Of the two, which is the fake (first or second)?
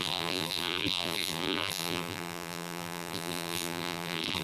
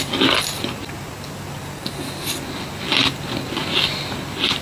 first